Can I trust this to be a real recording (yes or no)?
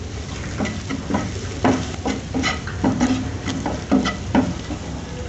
yes